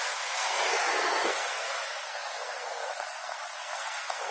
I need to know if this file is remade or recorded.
remade